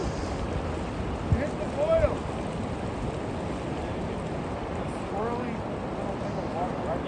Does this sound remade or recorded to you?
recorded